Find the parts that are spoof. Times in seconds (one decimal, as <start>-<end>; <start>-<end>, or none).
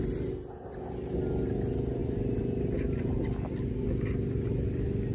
2.0-3.2